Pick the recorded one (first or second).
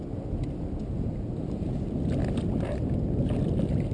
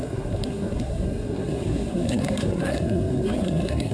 first